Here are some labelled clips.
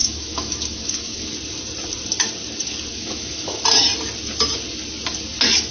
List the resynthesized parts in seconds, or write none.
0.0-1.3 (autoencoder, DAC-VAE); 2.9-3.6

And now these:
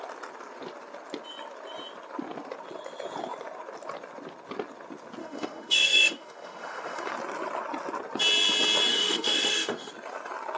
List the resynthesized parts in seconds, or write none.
5.2-7.1 (autoencoder, DAC-VAE); 8.9-9.9

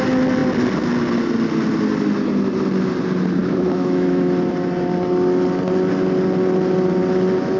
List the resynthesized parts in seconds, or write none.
3.4-4.3 (autoencoder, DAC-VAE)